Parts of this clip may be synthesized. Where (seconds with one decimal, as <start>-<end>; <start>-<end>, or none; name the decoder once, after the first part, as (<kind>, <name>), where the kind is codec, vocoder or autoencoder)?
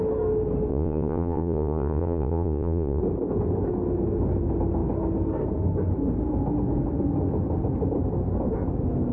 0.7-3.0 (vocoder, Vocos)